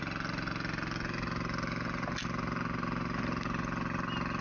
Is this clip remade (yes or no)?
no